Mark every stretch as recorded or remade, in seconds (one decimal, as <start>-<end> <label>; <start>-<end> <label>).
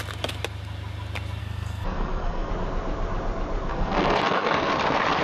0.0-1.4 recorded; 1.4-2.5 remade; 2.5-3.7 recorded; 3.7-4.7 remade; 4.7-5.2 recorded